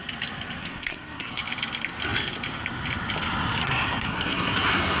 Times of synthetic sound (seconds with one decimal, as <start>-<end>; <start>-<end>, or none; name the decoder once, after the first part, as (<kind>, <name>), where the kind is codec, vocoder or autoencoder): 0.6-1.4 (codec, SNAC); 3.6-5.0